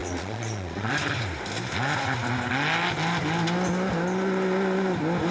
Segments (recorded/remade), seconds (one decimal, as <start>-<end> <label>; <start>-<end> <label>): 0.0-0.9 remade; 0.9-5.3 recorded